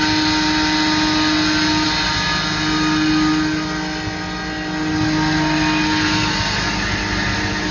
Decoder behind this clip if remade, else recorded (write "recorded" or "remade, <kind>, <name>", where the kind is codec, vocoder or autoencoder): recorded